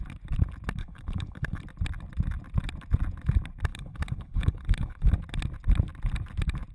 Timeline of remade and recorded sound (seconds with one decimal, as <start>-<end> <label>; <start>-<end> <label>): 0.0-0.8 recorded; 0.8-1.6 remade; 1.6-3.7 recorded; 3.7-5.1 remade; 5.1-6.7 recorded